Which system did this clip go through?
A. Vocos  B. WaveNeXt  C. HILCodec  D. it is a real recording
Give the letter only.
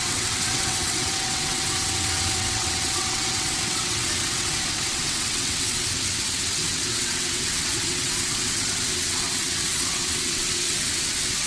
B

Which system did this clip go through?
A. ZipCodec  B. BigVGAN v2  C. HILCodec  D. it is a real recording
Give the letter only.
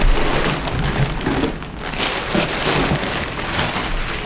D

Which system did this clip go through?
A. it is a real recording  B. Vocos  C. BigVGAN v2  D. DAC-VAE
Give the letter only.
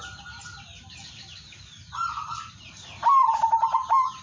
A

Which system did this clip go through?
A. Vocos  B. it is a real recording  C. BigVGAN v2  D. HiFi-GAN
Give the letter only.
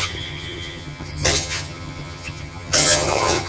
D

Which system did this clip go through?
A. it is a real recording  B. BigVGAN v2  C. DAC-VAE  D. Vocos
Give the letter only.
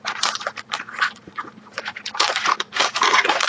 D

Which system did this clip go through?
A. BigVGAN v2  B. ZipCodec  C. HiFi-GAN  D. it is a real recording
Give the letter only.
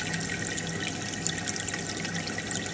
D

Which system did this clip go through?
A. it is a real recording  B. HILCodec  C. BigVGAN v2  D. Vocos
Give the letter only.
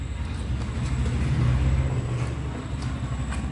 A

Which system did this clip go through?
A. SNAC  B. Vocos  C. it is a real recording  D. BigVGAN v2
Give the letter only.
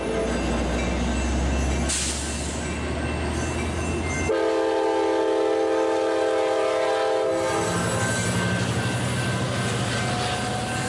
C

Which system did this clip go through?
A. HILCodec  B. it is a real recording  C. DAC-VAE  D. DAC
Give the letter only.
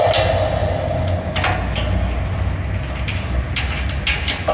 B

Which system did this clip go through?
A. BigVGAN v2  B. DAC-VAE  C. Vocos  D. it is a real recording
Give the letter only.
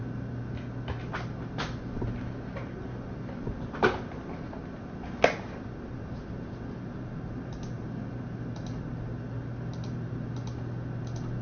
D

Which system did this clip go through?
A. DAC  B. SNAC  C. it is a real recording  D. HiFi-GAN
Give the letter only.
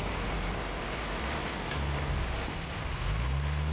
C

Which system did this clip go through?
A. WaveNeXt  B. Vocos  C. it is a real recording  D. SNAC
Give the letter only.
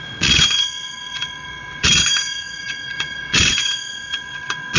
A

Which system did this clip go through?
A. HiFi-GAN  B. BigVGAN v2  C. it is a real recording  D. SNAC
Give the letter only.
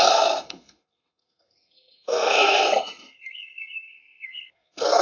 D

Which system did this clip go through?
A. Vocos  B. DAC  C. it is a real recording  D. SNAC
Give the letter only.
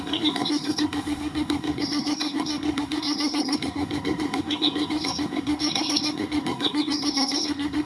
D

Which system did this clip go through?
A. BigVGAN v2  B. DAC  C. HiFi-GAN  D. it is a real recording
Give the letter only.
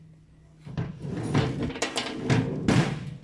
D